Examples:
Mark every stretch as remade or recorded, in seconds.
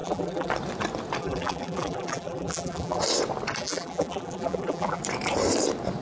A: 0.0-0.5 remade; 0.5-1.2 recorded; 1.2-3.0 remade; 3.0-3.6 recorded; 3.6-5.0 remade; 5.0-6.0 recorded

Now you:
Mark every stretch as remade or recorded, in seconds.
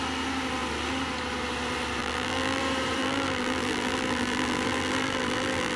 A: 0.0-2.0 recorded; 2.0-2.6 remade; 2.6-3.0 recorded; 3.0-5.8 remade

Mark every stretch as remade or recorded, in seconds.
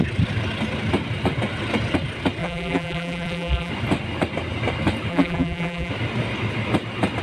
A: 0.0-2.4 recorded; 2.4-3.7 remade; 3.7-5.1 recorded; 5.1-5.9 remade; 5.9-7.2 recorded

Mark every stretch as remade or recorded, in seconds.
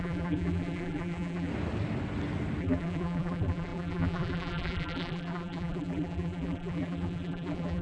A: 0.0-1.5 remade; 1.5-2.6 recorded; 2.6-7.8 remade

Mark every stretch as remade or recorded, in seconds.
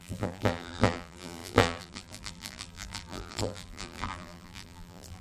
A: 0.0-5.2 remade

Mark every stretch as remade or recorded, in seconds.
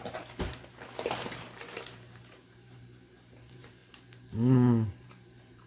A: 0.0-3.8 remade; 3.8-5.0 recorded; 5.0-5.7 remade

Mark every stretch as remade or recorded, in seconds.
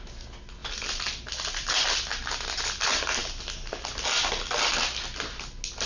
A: 0.0-0.6 recorded; 0.6-1.7 remade; 1.7-5.9 recorded